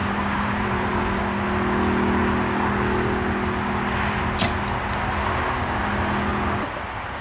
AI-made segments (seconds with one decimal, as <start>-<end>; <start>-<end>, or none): 0.0-1.2